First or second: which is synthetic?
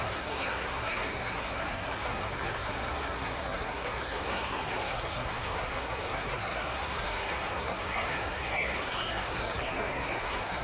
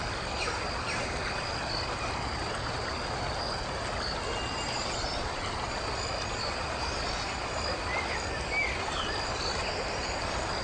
first